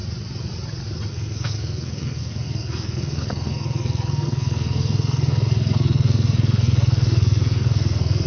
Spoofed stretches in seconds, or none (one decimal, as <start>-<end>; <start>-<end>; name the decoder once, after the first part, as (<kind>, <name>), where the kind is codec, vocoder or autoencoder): 1.1-8.3 (codec, SNAC)